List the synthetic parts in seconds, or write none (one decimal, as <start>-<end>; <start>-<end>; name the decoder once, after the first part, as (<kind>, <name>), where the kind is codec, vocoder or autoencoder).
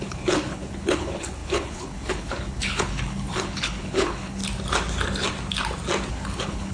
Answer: 0.0-4.4 (codec, HILCodec); 6.1-6.7